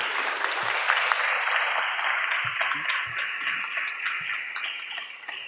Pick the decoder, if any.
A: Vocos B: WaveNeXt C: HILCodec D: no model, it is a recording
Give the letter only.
D